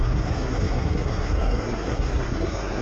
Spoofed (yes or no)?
yes